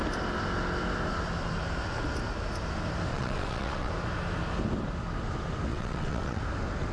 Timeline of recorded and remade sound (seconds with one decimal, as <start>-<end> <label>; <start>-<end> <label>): 0.0-3.1 recorded; 3.1-3.9 remade; 3.9-5.7 recorded; 5.7-6.4 remade; 6.4-6.9 recorded